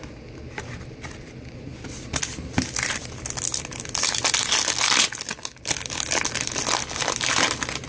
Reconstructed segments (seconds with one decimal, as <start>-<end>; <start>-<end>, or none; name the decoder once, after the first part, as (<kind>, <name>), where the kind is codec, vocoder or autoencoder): none